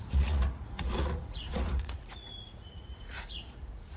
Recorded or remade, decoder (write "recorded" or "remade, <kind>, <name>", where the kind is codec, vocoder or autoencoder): remade, vocoder, Vocos